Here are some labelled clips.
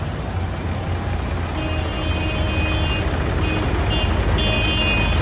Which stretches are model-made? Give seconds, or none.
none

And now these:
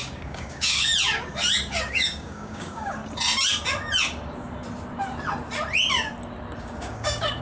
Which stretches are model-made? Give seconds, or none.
0.0-0.9 (codec, DAC); 1.7-3.0; 6.6-7.4